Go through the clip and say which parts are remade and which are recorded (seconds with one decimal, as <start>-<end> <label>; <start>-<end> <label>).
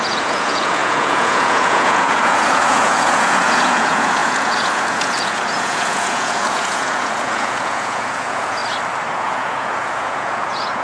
0.0-8.6 remade; 8.6-9.1 recorded; 9.1-10.8 remade